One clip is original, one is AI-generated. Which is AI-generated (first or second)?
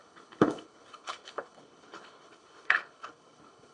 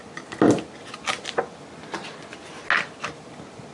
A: first